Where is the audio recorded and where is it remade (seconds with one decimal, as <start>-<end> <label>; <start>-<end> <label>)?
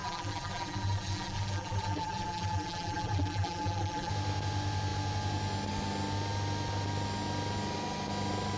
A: 0.0-4.1 remade; 4.1-8.6 recorded